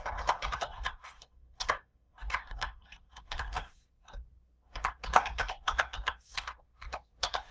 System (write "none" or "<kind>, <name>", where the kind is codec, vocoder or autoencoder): codec, SNAC